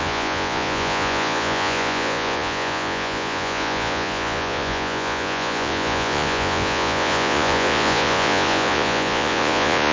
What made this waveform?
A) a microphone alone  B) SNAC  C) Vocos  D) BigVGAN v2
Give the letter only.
C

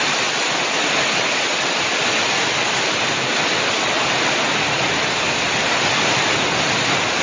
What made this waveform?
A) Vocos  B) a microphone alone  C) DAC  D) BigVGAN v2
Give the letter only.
B